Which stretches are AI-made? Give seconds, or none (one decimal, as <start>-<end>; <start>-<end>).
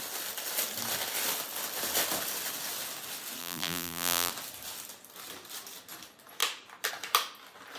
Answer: 3.4-4.3